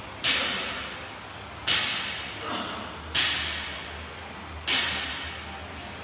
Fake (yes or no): no